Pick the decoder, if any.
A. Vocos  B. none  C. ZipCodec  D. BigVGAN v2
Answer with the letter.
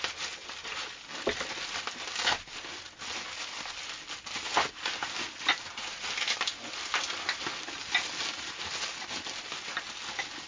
B